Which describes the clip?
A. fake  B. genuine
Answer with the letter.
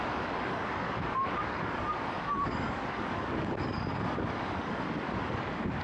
A